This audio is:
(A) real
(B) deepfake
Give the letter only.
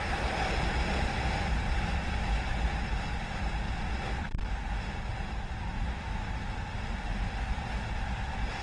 A